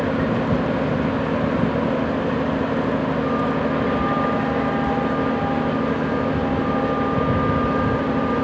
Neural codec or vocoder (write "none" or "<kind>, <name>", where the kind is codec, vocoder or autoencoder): none